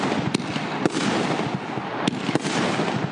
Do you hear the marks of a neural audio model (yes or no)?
no